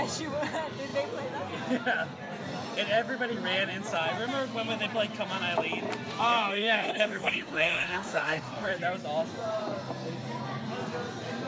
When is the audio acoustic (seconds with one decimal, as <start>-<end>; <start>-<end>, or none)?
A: 0.0-6.5; 8.7-11.5